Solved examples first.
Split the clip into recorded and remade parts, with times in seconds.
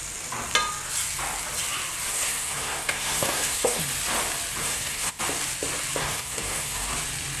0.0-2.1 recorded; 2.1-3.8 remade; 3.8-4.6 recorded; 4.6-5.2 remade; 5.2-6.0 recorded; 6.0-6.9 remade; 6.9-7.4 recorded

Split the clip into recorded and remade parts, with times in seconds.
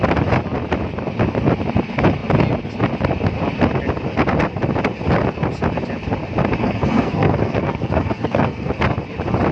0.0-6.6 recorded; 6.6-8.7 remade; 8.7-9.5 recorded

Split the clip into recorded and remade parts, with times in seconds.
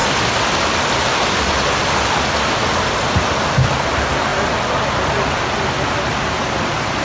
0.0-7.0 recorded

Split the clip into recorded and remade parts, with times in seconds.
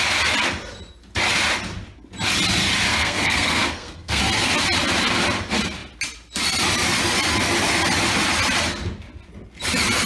0.0-2.9 recorded; 2.9-4.2 remade; 4.2-10.1 recorded